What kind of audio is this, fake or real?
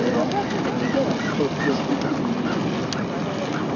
real